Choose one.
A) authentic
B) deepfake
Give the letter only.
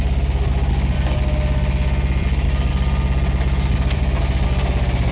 A